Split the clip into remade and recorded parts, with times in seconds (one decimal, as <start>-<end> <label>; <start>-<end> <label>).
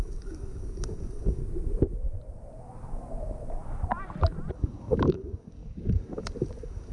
0.0-1.4 remade; 1.4-4.5 recorded; 4.5-6.9 remade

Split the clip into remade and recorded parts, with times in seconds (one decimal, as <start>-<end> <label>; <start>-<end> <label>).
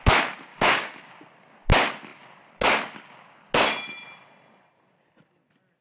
0.0-0.5 recorded; 0.5-1.1 remade; 1.1-5.8 recorded